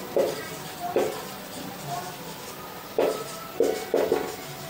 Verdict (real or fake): real